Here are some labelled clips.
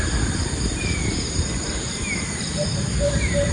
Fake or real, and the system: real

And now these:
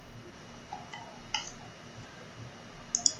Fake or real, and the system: real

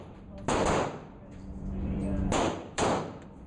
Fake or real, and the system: fake, vocoder, BigVGAN v2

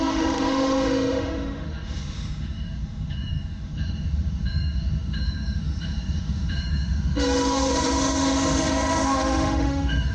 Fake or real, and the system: fake, autoencoder, DAC-VAE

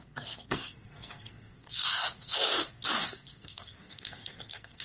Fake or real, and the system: fake, codec, SNAC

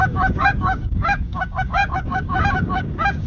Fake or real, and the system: fake, codec, DAC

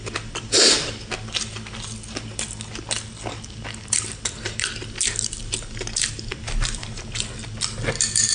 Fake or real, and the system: real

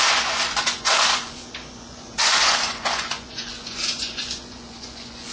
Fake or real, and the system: fake, vocoder, Vocos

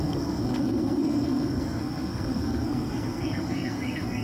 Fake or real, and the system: fake, codec, SNAC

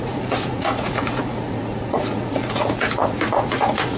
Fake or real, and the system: fake, vocoder, Vocos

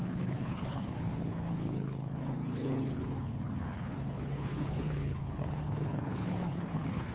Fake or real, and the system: fake, codec, HILCodec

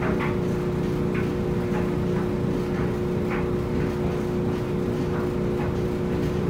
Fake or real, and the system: real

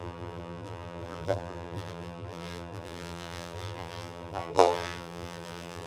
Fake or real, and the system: fake, vocoder, BigVGAN v2